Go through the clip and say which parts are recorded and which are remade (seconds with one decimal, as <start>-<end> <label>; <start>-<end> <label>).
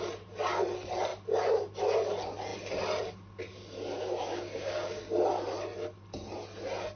0.0-4.2 recorded; 4.2-5.0 remade; 5.0-7.0 recorded